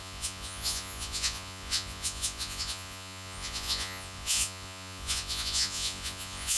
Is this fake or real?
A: fake